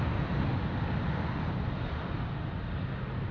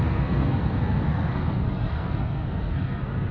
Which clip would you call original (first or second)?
first